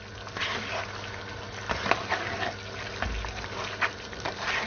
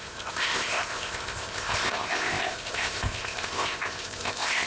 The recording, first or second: first